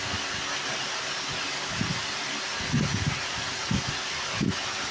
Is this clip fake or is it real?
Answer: real